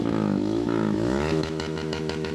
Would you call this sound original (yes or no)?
no